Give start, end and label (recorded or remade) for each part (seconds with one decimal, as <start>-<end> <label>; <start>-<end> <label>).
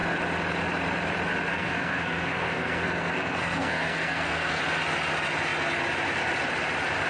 0.0-1.5 recorded; 1.5-4.6 remade; 4.6-7.1 recorded